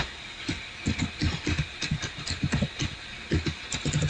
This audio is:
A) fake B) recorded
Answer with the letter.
B